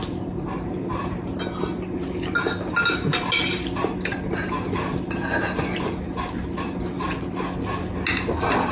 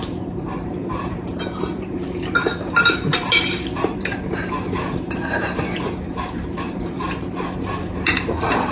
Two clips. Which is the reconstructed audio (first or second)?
second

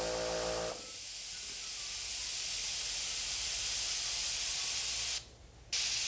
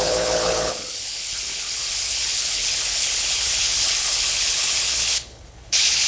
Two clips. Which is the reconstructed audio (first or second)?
second